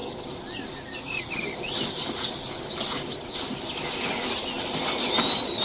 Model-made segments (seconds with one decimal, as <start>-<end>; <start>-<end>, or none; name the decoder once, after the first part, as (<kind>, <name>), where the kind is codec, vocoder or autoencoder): none